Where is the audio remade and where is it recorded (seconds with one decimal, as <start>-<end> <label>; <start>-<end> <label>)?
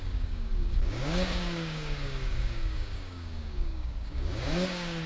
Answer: 0.0-5.1 remade